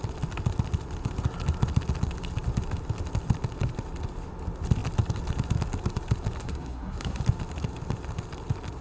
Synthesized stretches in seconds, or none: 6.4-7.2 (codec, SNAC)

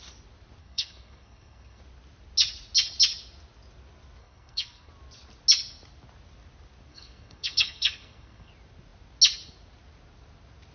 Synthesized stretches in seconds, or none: 0.6-1.8 (codec, SNAC); 4.2-4.9; 6.9-8.5

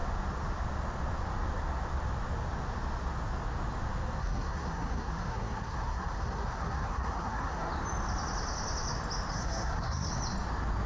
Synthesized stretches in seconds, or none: 4.2-7.7 (codec, SNAC); 9.3-10.1

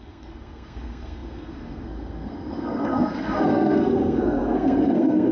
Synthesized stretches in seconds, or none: 0.0-5.3 (codec, SNAC)

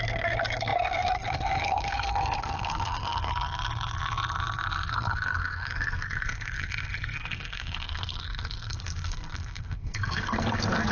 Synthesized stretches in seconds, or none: 0.0-3.3 (codec, SNAC); 4.9-10.9

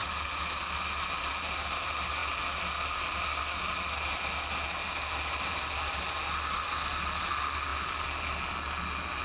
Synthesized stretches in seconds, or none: none

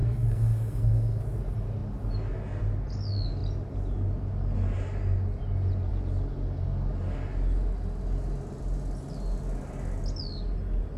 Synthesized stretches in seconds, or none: 0.0-1.2 (codec, SNAC)

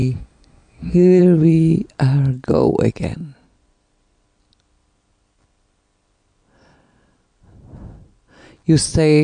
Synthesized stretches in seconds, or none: 0.0-1.2 (codec, SNAC)